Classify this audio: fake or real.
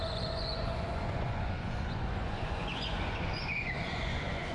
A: fake